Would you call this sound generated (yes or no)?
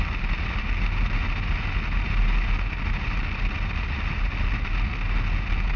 no